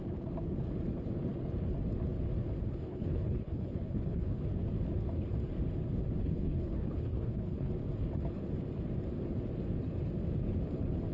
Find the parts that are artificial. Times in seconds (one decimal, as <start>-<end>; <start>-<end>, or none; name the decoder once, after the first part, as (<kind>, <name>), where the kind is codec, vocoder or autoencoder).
2.6-4.4 (codec, HILCodec); 6.2-7.7